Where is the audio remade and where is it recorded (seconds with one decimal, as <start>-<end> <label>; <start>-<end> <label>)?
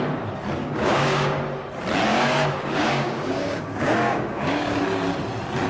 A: 0.0-0.6 recorded; 0.6-1.4 remade; 1.4-2.1 recorded; 2.1-4.8 remade; 4.8-5.7 recorded